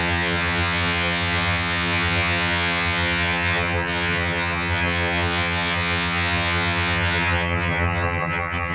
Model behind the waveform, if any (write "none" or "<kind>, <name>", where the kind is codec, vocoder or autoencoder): vocoder, HiFi-GAN